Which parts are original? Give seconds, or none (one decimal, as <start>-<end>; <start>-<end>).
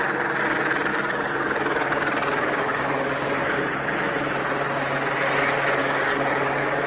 0.0-0.9; 3.6-5.8